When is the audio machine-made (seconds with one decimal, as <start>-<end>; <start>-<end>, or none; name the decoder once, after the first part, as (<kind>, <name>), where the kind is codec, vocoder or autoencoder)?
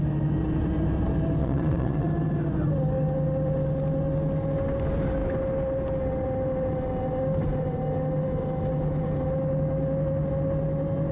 1.4-2.1 (vocoder, Vocos)